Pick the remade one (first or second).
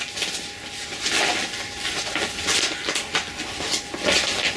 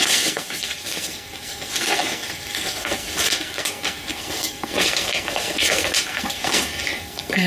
second